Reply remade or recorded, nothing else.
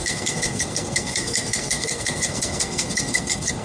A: remade